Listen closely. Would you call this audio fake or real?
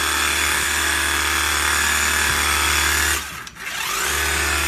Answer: real